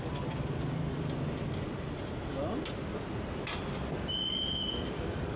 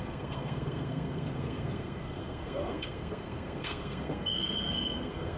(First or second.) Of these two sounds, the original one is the first